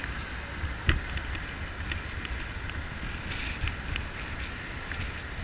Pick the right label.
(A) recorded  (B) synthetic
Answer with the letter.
A